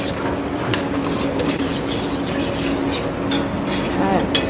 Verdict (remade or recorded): recorded